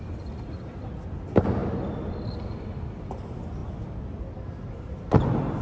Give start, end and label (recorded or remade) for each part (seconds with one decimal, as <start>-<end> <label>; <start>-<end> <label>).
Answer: 0.0-5.6 recorded